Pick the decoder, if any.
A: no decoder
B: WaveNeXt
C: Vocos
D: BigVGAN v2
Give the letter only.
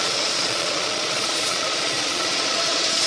C